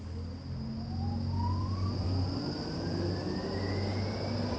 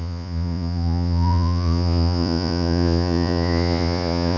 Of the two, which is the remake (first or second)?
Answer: second